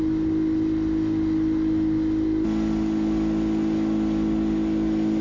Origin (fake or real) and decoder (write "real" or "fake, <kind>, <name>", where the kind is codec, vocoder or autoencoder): real